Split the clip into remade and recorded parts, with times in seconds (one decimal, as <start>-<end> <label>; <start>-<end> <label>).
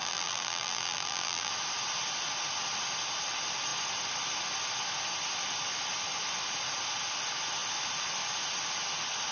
0.0-1.5 remade; 1.5-9.3 recorded